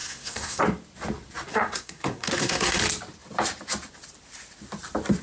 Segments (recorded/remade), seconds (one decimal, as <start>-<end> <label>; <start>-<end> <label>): 0.0-0.6 remade; 0.6-1.5 recorded; 1.5-2.8 remade; 2.8-5.2 recorded